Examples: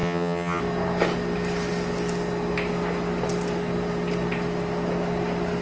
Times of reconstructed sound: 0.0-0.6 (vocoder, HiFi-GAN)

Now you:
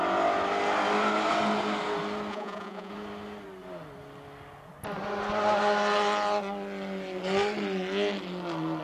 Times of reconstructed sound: 2.3-2.9 (vocoder, Vocos)

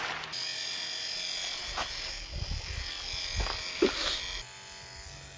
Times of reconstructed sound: none

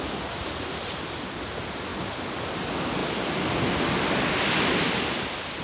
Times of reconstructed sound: none

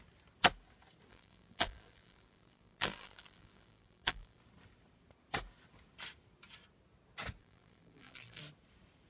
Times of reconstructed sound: 1.1-4.4 (vocoder, BigVGAN v2); 7.4-8.4

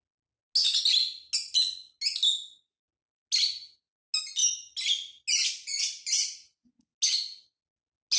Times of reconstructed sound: none

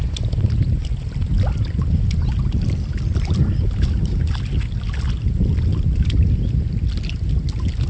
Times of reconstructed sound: none